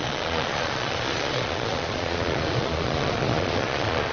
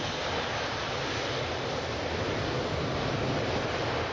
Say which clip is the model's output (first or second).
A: first